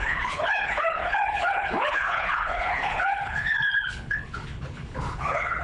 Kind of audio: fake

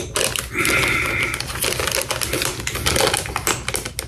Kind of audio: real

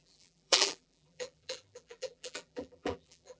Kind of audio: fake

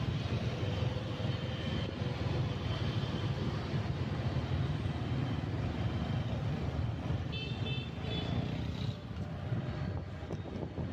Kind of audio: real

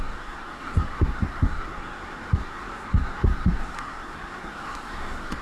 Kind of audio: fake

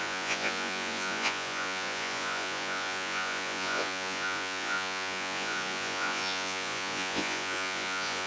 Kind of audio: fake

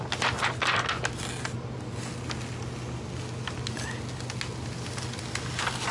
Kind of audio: real